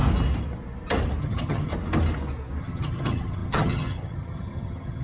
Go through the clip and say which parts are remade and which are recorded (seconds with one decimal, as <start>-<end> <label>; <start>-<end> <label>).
0.0-1.2 recorded; 1.2-1.7 remade; 1.7-2.6 recorded; 2.6-5.0 remade